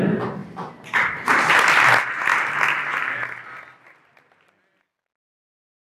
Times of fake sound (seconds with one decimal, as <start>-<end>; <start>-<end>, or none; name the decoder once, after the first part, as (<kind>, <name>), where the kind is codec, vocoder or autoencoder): 0.4-1.5 (vocoder, BigVGAN v2)